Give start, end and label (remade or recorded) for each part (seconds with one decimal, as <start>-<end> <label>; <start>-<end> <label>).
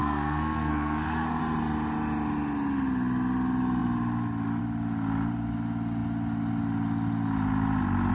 0.0-1.4 remade; 1.4-8.1 recorded